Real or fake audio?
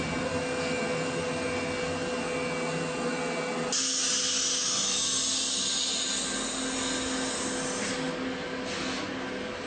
real